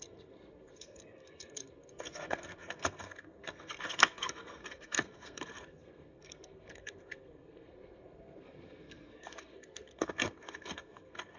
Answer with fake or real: fake